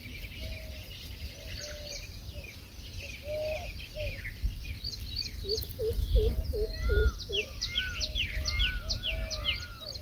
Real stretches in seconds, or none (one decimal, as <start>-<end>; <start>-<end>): 0.0-10.0